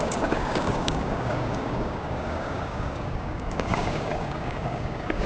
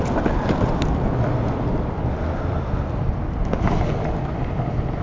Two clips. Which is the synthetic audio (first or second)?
first